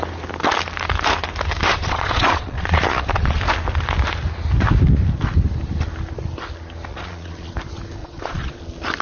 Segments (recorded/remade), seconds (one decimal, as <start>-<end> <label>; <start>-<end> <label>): 0.0-1.7 recorded; 1.7-3.4 remade; 3.4-6.9 recorded; 6.9-7.5 remade; 7.5-8.0 recorded; 8.0-8.6 remade; 8.6-9.0 recorded